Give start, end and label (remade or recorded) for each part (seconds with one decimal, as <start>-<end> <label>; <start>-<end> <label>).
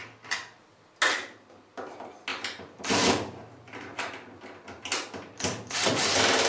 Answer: 0.0-2.3 recorded; 2.3-4.4 remade; 4.4-6.5 recorded